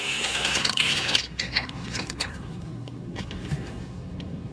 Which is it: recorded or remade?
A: remade